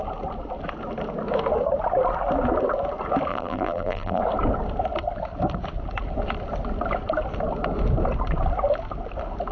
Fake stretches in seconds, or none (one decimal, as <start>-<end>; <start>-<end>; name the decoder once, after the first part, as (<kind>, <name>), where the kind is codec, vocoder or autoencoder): 3.3-4.2 (vocoder, BigVGAN v2)